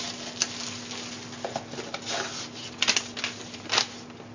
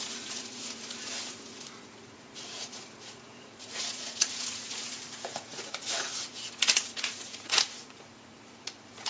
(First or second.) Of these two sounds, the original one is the first